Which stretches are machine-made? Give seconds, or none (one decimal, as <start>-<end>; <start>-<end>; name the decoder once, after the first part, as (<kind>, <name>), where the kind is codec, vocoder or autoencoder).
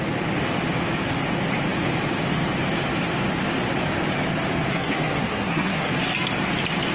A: 4.7-5.9 (codec, SNAC)